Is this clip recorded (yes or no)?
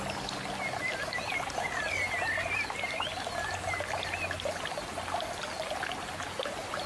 yes